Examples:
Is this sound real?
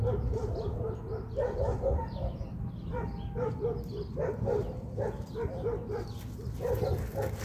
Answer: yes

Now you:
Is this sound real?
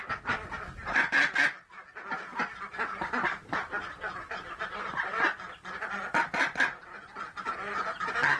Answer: yes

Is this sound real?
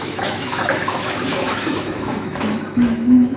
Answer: no